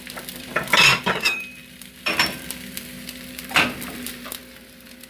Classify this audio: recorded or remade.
remade